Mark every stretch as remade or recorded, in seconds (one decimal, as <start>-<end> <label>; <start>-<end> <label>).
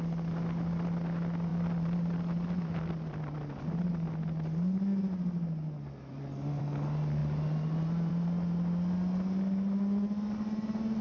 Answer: 0.0-11.0 recorded